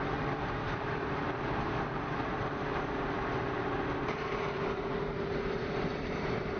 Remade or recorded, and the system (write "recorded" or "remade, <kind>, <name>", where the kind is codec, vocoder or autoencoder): remade, vocoder, BigVGAN v2